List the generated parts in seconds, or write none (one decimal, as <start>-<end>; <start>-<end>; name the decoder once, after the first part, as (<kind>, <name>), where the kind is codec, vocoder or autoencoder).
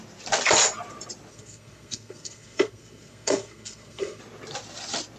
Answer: 1.3-4.2 (codec, SNAC)